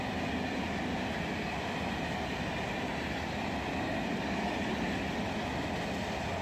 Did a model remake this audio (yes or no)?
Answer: no